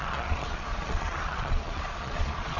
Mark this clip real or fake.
fake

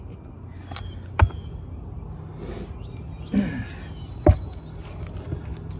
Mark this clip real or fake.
real